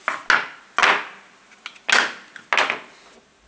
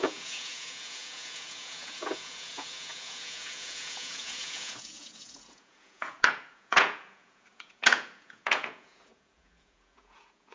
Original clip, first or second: first